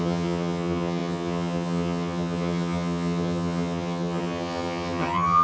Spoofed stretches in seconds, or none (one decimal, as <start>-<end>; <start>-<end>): 0.0-5.4